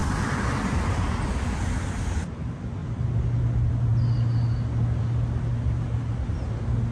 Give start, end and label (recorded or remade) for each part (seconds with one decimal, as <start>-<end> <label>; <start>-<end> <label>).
0.0-6.9 recorded